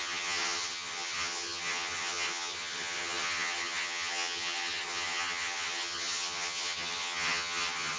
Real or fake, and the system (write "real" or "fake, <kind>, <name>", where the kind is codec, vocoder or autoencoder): fake, vocoder, HiFi-GAN